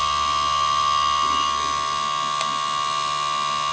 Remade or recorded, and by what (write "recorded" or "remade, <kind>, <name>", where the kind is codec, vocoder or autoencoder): recorded